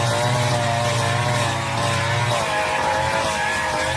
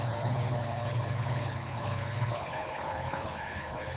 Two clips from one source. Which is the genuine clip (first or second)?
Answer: first